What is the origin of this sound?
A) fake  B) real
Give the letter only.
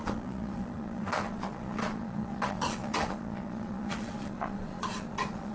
A